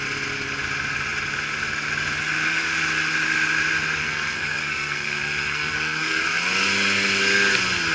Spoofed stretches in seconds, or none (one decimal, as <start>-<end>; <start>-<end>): 4.0-6.2